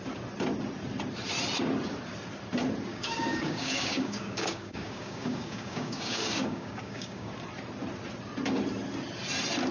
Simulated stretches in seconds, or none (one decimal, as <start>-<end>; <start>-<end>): 2.9-7.3